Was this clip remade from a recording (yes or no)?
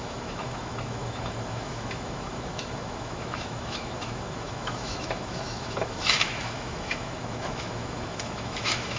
yes